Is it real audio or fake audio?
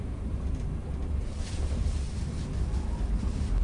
real